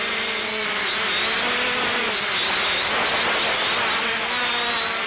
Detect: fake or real real